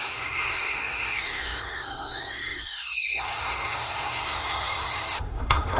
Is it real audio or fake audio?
fake